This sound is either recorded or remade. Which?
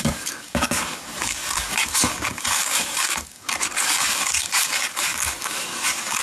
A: remade